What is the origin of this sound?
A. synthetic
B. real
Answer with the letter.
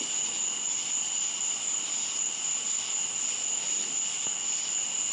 B